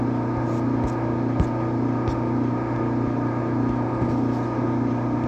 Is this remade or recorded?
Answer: recorded